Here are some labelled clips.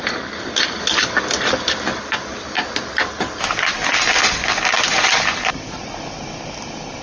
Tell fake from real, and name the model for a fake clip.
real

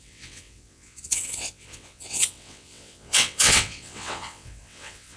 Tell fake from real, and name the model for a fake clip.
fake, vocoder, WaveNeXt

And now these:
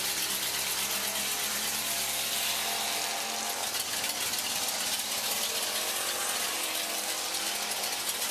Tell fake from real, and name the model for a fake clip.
real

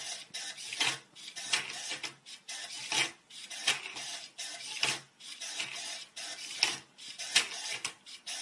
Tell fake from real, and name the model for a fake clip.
real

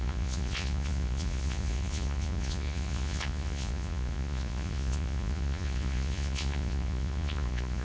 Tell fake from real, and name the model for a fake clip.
fake, vocoder, Vocos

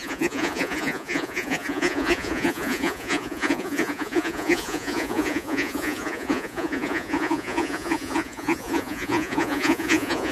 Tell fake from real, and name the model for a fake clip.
fake, vocoder, Vocos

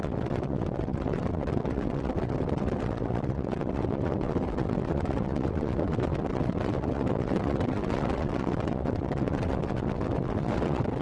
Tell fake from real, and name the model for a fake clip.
fake, vocoder, WaveNeXt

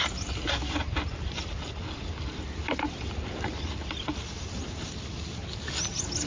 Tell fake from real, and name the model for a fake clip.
real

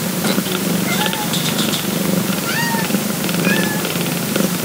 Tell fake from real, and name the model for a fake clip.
real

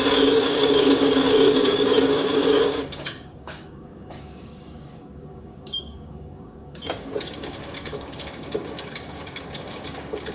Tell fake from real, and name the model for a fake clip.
fake, codec, DAC